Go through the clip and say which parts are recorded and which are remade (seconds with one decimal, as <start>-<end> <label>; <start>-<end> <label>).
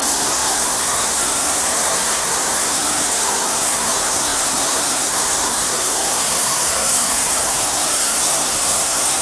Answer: 0.0-9.2 remade